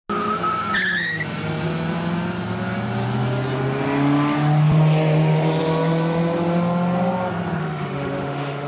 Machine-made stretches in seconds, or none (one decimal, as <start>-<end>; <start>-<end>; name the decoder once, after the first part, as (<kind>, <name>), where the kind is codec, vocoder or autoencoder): 7.6-8.7 (autoencoder, DAC-VAE)